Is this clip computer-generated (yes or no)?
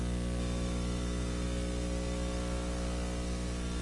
no